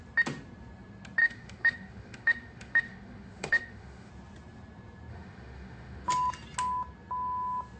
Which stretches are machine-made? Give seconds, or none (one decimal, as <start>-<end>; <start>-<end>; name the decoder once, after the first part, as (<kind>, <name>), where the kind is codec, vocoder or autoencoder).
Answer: 1.2-4.1 (autoencoder, DAC-VAE); 5.1-6.1